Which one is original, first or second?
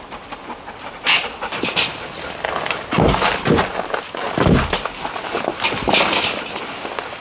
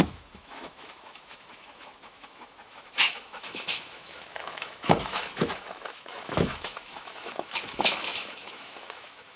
first